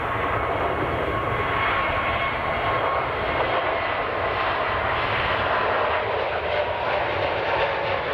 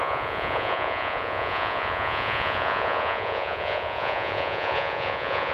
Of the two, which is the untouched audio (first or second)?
first